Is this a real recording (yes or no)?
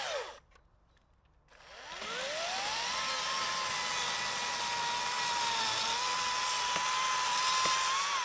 yes